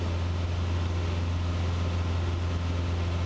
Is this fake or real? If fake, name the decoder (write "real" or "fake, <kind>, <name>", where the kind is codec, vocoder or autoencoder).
real